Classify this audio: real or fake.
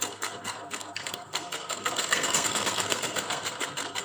fake